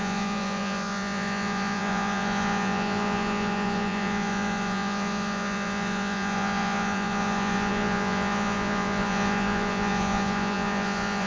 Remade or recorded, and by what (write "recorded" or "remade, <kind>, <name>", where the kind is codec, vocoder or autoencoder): remade, vocoder, Vocos